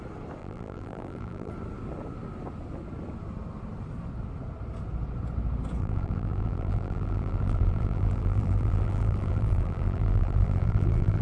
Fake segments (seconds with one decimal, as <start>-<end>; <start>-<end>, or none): 0.4-1.5; 5.8-11.2